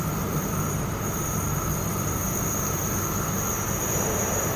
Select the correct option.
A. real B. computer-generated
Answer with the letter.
B